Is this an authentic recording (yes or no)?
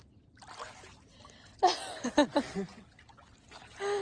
yes